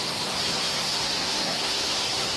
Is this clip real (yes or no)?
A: no